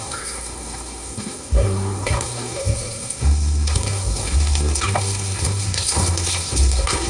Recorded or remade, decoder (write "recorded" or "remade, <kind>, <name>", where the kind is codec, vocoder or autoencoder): remade, codec, SNAC